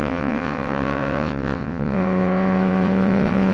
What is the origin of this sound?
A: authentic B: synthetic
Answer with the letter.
B